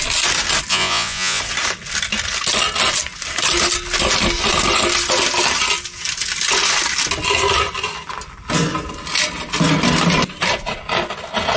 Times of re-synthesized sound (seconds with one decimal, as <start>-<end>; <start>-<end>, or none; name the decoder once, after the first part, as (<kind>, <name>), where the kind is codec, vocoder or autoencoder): 0.7-1.4 (vocoder, Vocos)